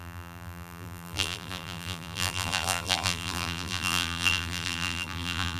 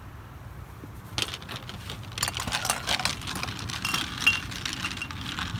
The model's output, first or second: first